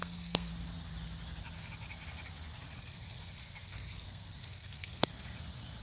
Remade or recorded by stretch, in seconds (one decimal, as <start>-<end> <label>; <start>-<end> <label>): 0.0-0.5 remade; 0.5-2.8 recorded; 2.8-5.1 remade; 5.1-5.8 recorded